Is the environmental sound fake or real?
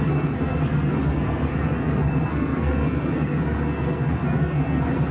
fake